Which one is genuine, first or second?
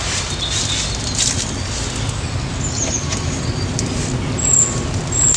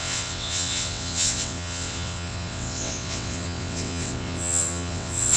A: first